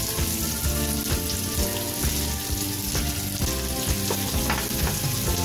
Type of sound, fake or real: real